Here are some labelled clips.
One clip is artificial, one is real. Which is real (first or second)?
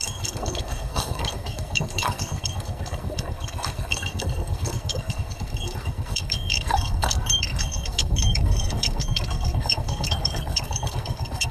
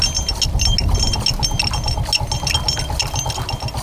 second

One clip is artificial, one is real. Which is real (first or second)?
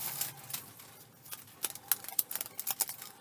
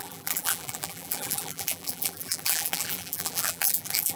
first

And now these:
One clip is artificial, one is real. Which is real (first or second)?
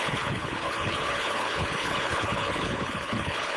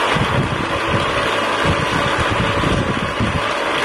second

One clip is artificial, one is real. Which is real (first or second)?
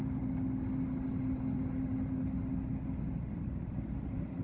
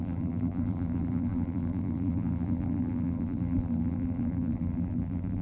first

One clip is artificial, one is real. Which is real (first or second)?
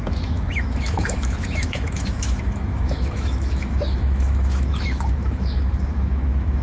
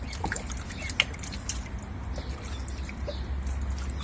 second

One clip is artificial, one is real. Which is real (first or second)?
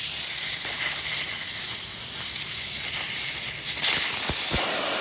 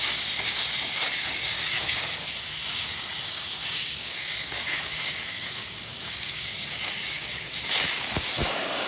first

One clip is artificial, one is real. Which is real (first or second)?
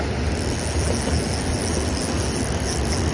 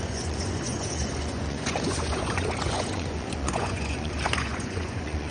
first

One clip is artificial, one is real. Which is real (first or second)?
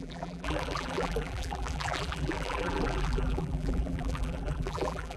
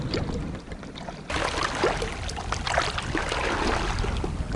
second